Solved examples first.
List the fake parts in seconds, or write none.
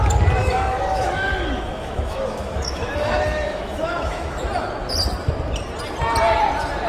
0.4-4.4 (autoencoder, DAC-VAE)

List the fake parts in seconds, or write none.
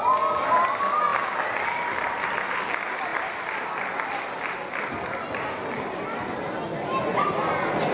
none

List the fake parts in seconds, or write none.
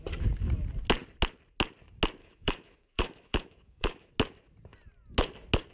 2.2-4.1 (autoencoder, DAC-VAE)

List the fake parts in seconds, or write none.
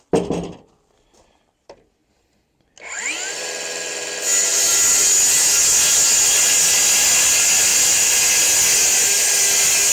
7.7-8.2 (vocoder, BigVGAN v2)